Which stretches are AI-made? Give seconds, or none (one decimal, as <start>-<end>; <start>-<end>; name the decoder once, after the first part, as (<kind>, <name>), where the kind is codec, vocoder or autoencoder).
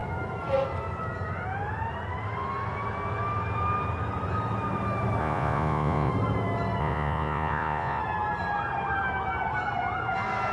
5.2-6.1 (vocoder, Vocos); 6.8-8.0